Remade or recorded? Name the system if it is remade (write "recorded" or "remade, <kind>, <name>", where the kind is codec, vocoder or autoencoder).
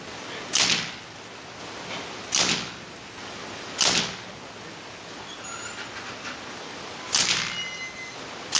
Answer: recorded